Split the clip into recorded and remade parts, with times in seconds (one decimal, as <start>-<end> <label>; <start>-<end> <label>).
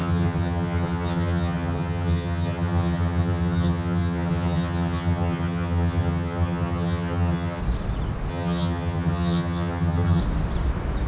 0.0-7.6 remade; 7.6-8.3 recorded; 8.3-10.2 remade; 10.2-11.1 recorded